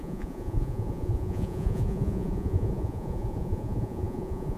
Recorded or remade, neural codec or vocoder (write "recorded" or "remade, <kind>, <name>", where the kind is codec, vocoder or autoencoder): remade, vocoder, Vocos